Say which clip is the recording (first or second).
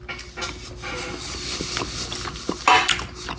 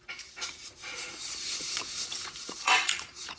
first